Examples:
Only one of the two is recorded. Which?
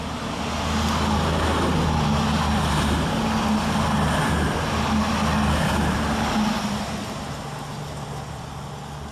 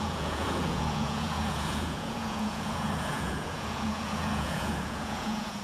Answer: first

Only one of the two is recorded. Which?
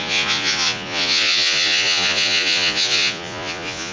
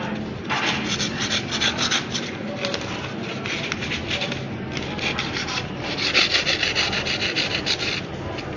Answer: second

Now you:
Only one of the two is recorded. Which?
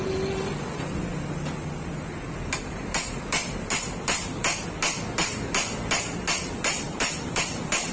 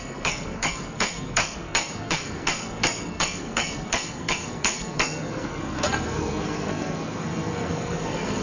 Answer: first